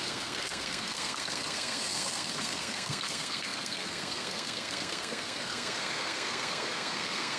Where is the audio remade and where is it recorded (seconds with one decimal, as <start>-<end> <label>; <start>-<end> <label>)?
0.0-7.4 remade